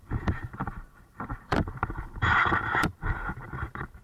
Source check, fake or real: fake